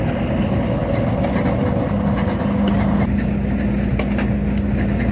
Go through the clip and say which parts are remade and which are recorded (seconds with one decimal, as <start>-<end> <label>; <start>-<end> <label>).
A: 0.0-5.1 recorded